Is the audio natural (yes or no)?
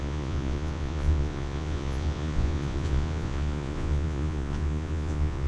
no